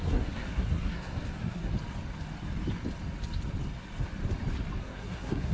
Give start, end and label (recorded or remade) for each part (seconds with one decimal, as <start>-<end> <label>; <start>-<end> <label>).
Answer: 0.0-1.7 remade; 1.7-4.8 recorded; 4.8-5.5 remade